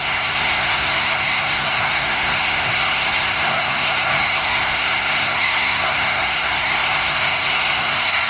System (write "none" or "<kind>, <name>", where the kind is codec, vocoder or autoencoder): codec, SNAC